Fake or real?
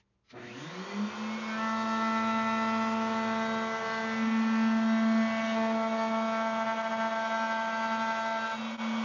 real